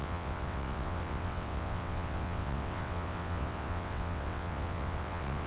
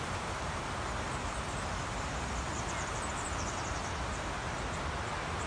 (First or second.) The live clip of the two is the second